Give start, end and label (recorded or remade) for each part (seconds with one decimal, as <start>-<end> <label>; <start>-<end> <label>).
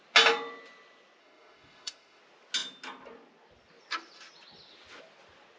0.0-1.2 recorded; 1.2-2.2 remade; 2.2-5.6 recorded